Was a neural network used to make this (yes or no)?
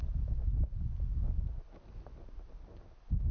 no